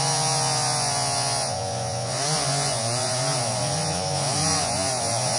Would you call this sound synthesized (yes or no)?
yes